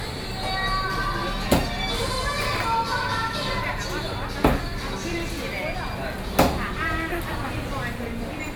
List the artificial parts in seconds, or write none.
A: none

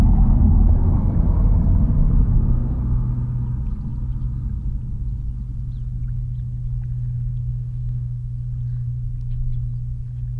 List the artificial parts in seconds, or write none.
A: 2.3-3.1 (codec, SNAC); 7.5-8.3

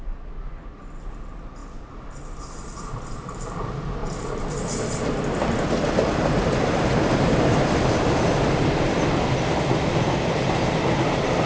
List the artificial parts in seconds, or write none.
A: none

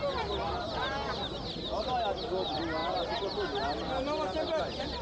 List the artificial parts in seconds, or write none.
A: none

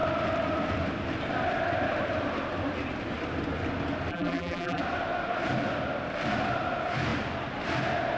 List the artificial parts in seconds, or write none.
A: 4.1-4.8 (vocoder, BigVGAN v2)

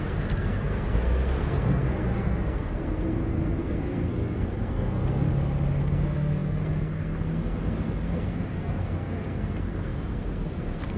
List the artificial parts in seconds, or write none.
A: 0.0-5.3 (codec, SNAC); 5.8-11.0

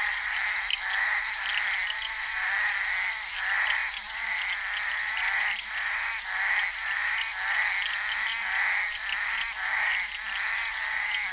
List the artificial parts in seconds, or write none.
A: none

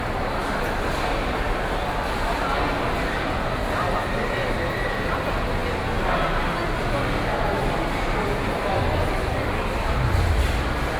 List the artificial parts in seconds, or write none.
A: none